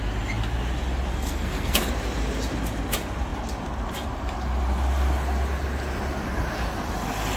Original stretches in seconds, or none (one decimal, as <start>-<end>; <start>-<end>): 0.0-1.1; 1.9-7.4